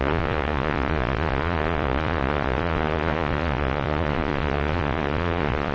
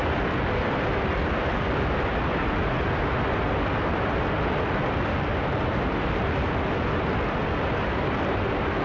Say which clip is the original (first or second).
second